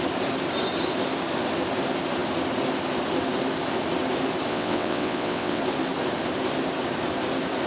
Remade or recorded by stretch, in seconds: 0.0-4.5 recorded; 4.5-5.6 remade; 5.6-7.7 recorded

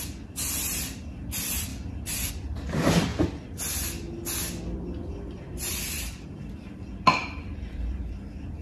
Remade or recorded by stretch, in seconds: 0.0-3.1 remade; 3.1-4.8 recorded; 4.8-8.6 remade

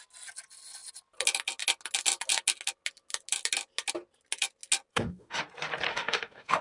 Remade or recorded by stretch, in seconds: 0.0-4.9 recorded; 4.9-5.4 remade; 5.4-5.9 recorded; 5.9-6.6 remade

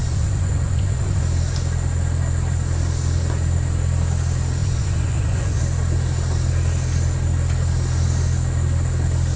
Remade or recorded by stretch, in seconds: 0.0-1.2 remade; 1.2-4.6 recorded; 4.6-5.6 remade; 5.6-9.4 recorded

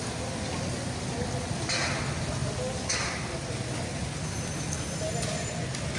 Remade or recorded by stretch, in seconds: 0.0-6.0 recorded

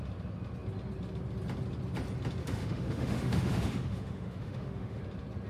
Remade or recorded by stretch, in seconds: 0.0-2.4 recorded; 2.4-5.0 remade; 5.0-5.5 recorded

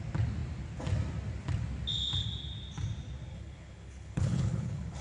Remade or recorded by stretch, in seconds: 0.0-3.3 recorded; 3.3-5.0 remade